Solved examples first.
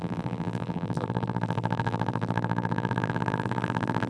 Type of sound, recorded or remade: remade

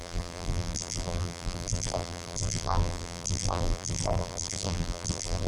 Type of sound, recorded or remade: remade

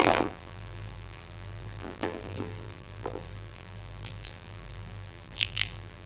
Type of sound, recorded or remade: remade